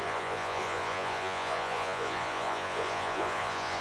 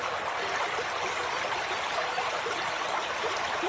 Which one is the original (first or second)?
second